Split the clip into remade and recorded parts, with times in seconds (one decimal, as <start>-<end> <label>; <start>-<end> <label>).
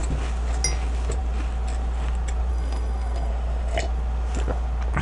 0.0-2.5 recorded; 2.5-3.3 remade; 3.3-5.0 recorded